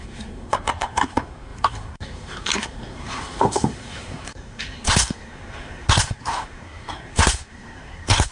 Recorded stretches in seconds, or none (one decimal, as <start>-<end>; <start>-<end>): none